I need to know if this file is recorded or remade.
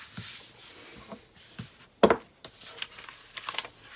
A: recorded